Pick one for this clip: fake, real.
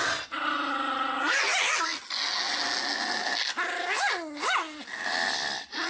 real